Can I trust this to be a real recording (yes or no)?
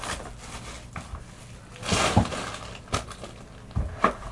yes